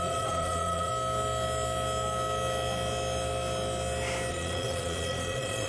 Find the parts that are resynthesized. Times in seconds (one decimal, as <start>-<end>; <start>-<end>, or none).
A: 0.0-0.9; 4.3-5.7